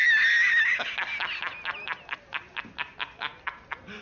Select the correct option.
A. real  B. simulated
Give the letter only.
A